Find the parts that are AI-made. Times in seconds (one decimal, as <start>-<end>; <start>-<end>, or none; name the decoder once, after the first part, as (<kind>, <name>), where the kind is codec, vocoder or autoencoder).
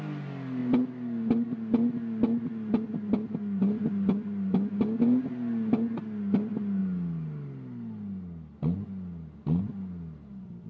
none